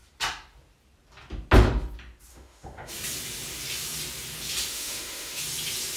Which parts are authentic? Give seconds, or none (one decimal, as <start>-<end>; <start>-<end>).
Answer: 0.0-2.3; 2.9-4.7; 5.4-6.0